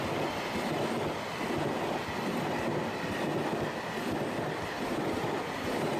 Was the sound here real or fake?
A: real